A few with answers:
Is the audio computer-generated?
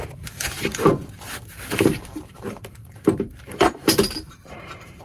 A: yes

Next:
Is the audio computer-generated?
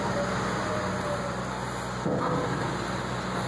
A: no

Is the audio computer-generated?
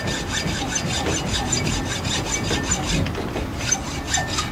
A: no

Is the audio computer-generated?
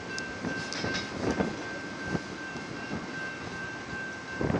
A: no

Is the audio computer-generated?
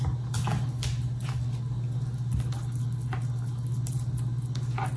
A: no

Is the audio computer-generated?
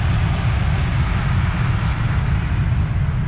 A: no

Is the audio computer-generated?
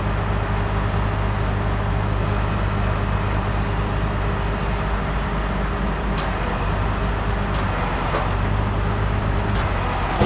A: no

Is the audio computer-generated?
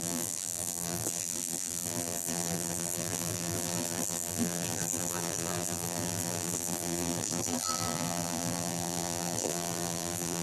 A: yes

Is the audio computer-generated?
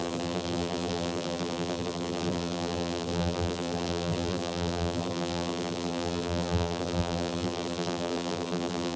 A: yes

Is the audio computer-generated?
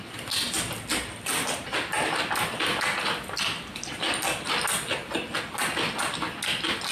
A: no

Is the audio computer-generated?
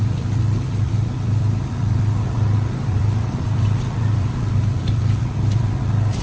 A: yes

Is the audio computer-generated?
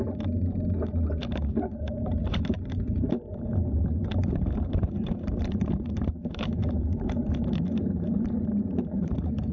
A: yes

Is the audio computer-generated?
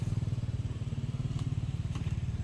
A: yes